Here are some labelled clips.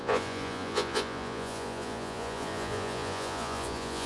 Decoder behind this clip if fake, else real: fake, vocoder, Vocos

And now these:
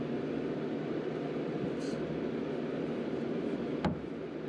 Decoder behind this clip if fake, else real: real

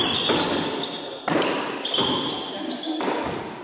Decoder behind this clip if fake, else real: real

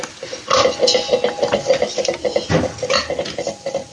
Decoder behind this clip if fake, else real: real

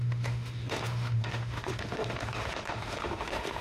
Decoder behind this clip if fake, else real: fake, autoencoder, DAC-VAE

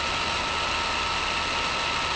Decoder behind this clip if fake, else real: real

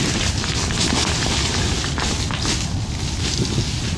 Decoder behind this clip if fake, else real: real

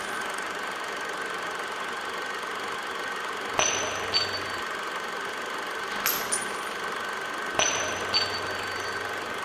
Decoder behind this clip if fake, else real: real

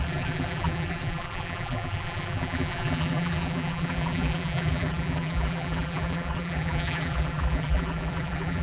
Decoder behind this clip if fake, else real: fake, vocoder, BigVGAN v2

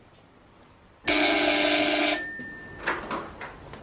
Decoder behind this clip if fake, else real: real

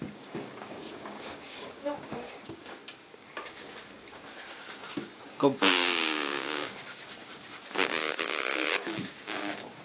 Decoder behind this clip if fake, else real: fake, codec, DAC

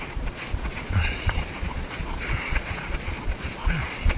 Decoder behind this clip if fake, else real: fake, vocoder, Vocos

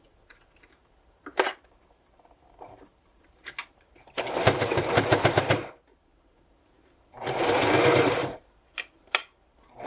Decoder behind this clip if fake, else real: fake, vocoder, BigVGAN v2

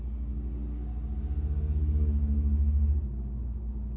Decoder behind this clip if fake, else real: real